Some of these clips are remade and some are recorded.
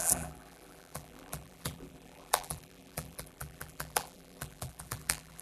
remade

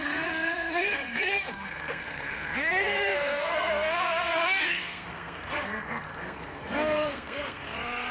remade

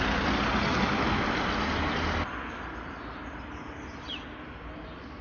recorded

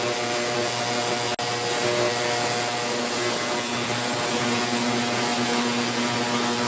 recorded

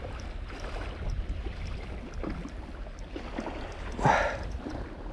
recorded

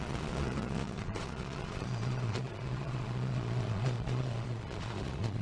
remade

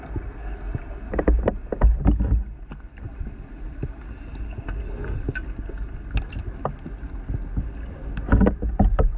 recorded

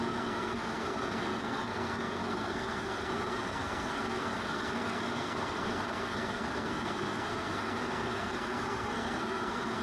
remade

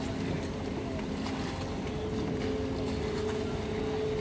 recorded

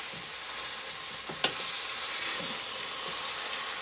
recorded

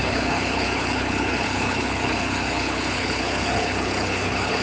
remade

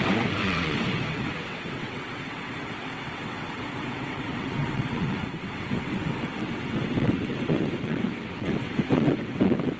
remade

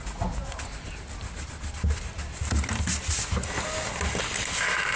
recorded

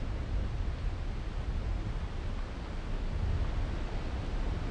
recorded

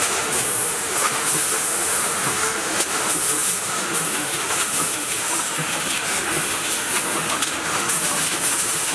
remade